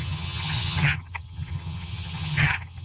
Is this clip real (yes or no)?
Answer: no